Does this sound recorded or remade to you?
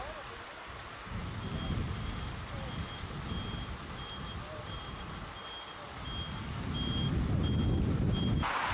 recorded